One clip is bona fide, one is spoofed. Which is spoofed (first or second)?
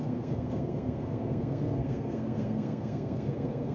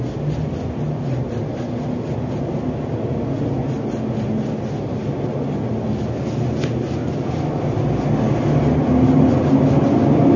first